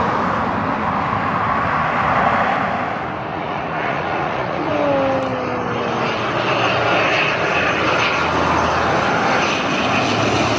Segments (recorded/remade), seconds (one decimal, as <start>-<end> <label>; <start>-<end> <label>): 0.0-3.3 recorded; 3.3-4.7 remade; 4.7-10.6 recorded